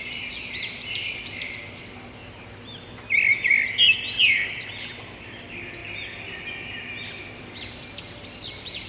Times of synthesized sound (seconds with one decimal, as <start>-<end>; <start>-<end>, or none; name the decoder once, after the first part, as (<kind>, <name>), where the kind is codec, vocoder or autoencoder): 0.0-2.2 (vocoder, BigVGAN v2); 5.0-5.8; 7.6-8.9